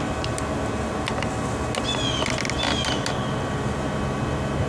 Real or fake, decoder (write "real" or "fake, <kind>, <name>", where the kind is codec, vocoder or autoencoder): real